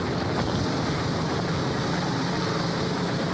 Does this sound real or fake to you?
real